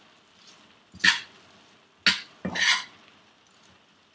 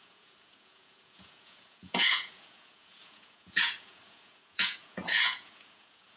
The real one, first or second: first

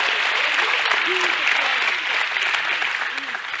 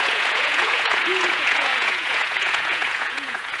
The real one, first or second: first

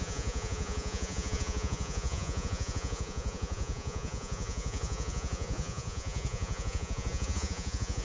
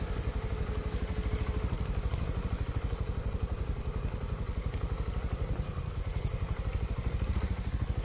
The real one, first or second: second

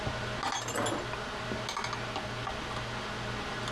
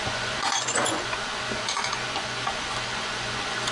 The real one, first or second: first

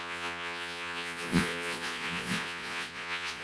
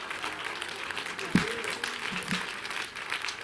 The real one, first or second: second